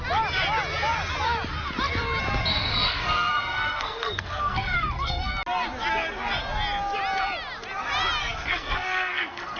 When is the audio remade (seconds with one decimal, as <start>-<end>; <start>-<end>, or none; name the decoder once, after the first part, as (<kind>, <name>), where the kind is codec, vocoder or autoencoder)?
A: 2.5-5.3 (codec, SNAC); 8.2-9.6